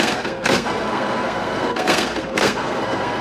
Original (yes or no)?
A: no